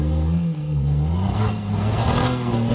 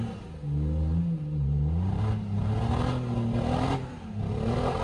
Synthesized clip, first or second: first